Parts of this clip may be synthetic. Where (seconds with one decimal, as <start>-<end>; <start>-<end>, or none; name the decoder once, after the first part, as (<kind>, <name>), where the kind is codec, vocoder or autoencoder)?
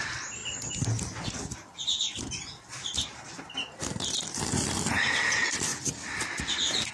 0.0-0.4 (vocoder, BigVGAN v2); 3.4-5.7